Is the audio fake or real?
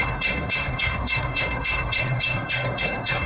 fake